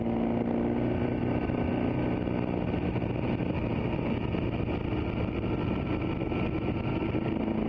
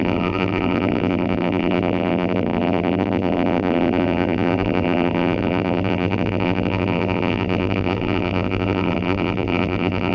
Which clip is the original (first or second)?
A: first